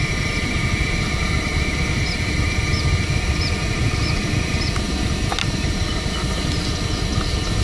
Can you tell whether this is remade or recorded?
recorded